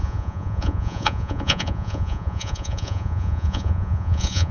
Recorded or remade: remade